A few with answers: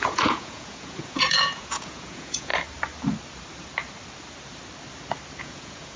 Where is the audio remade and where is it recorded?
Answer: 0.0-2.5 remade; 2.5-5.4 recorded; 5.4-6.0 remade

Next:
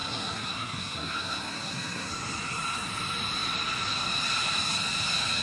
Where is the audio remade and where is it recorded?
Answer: 0.0-2.1 remade; 2.1-5.4 recorded

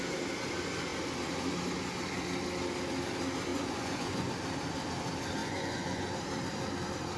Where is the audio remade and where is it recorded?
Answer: 0.0-3.5 recorded; 3.5-4.3 remade; 4.3-5.4 recorded; 5.4-6.1 remade; 6.1-7.2 recorded

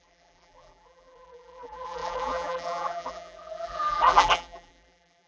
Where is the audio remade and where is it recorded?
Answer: 0.0-5.3 remade